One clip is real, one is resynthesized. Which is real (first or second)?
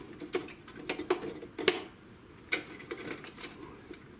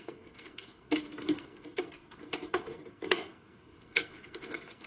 first